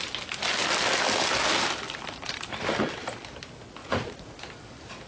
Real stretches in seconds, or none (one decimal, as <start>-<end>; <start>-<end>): 0.0-3.8; 4.4-5.1